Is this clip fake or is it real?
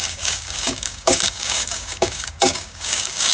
fake